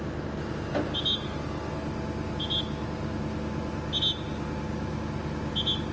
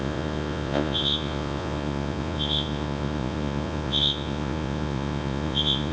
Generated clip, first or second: second